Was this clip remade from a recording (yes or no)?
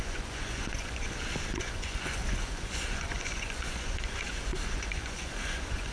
yes